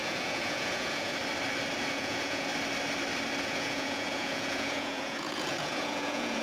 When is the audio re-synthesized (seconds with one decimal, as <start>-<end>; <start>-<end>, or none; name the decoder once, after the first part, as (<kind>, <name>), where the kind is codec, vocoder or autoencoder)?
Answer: 0.0-1.1 (vocoder, Vocos); 1.9-2.5; 3.4-6.4